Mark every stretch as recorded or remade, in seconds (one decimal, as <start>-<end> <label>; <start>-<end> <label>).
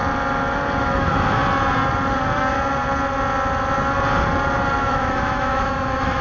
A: 0.0-0.8 recorded; 0.8-1.4 remade; 1.4-4.8 recorded; 4.8-6.2 remade